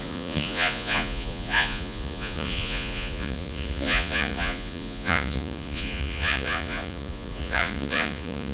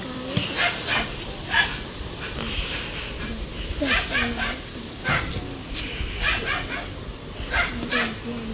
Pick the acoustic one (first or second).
second